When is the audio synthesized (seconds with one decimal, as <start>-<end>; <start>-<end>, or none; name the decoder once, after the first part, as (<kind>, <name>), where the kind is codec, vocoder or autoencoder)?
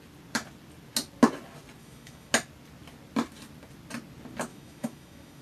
1.8-2.3 (autoencoder, DAC-VAE); 4.5-5.4